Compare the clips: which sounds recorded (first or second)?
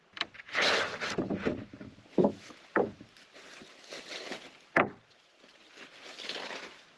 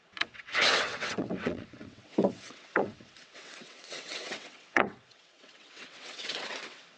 first